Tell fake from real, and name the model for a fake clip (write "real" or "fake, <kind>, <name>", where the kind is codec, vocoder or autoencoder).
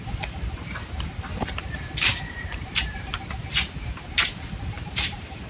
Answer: fake, vocoder, BigVGAN v2